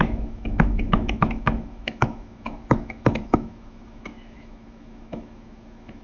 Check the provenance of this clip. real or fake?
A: fake